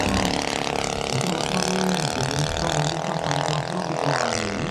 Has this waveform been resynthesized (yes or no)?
no